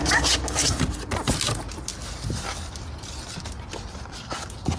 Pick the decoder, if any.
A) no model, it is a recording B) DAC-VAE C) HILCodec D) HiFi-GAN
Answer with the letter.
A